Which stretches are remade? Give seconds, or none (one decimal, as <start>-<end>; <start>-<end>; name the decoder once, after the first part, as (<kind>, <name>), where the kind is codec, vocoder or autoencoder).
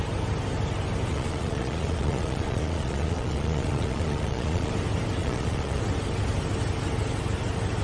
1.1-4.7 (vocoder, Vocos); 5.2-5.8